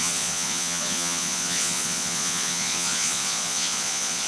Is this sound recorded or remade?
remade